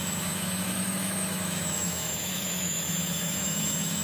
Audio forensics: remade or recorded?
remade